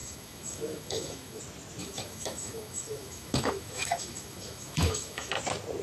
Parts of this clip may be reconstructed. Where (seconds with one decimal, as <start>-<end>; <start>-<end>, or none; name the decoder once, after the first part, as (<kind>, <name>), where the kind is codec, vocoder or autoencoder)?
0.0-1.4 (autoencoder, DAC-VAE); 1.8-5.3